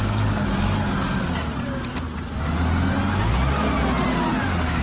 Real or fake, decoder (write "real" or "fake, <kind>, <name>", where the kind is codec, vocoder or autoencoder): real